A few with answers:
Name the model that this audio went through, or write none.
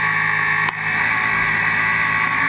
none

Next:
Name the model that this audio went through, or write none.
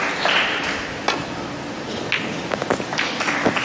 none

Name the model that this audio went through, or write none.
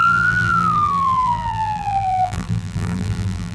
vocoder, BigVGAN v2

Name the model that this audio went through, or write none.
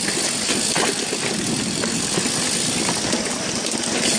none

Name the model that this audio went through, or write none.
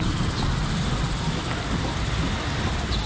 vocoder, BigVGAN v2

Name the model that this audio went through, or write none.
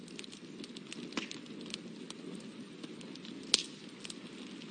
none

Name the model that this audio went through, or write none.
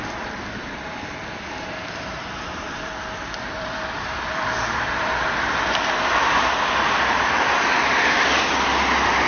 vocoder, BigVGAN v2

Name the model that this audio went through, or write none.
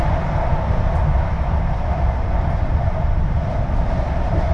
vocoder, BigVGAN v2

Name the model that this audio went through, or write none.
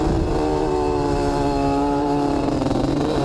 vocoder, BigVGAN v2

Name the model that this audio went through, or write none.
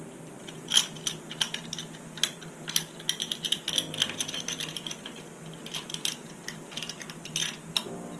none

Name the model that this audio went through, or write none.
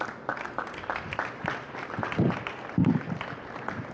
vocoder, BigVGAN v2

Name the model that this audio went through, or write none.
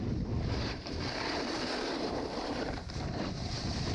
vocoder, BigVGAN v2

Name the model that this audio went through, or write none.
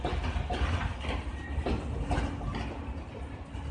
none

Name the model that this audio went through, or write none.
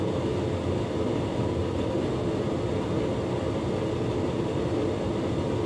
none